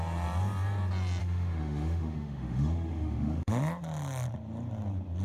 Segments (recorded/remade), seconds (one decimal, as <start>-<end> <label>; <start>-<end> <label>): 0.0-1.2 recorded; 1.2-3.6 remade; 3.6-5.2 recorded